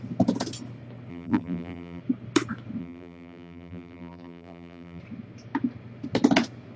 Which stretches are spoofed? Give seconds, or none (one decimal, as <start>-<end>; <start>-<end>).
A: 1.1-2.0; 2.8-5.0